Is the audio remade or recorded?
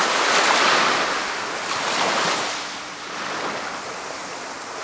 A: recorded